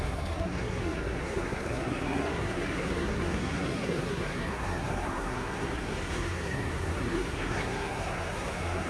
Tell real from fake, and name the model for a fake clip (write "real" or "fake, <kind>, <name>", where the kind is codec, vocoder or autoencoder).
fake, codec, SNAC